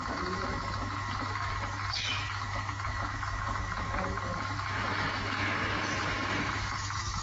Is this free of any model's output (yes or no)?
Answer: no